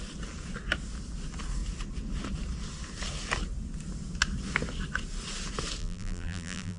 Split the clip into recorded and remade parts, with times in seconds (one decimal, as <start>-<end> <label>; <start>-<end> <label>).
0.0-5.8 recorded; 5.8-6.8 remade